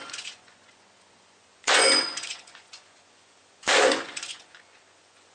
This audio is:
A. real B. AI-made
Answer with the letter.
B